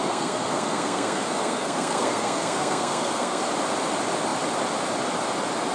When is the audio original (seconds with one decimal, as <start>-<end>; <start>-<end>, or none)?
3.4-5.7

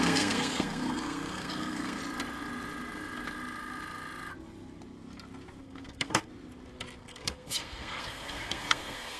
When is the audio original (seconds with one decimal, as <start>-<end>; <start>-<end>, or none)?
2.0-5.6; 6.3-7.0

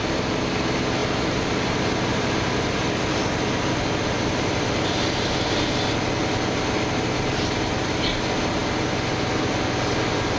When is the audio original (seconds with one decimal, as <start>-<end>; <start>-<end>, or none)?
0.0-10.4